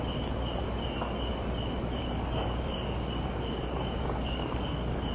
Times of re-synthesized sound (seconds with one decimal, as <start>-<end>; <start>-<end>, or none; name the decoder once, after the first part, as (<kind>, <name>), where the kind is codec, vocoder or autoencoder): 2.0-5.1 (codec, DAC)